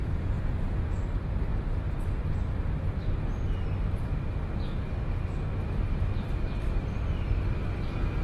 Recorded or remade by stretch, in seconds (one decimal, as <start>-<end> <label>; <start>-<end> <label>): 0.0-1.0 remade; 1.0-8.2 recorded